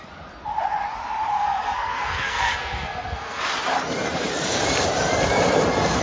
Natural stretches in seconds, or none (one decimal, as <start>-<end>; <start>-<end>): 0.0-1.3; 3.4-6.0